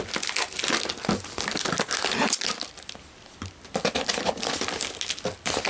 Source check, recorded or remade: recorded